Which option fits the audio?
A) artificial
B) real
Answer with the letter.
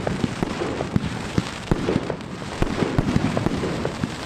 A